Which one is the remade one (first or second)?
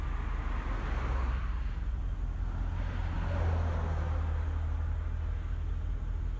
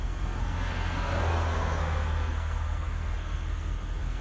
second